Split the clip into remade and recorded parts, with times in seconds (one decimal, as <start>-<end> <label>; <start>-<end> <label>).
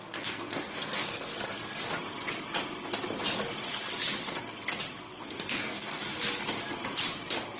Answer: 0.0-1.3 remade; 1.3-5.1 recorded; 5.1-6.0 remade; 6.0-7.6 recorded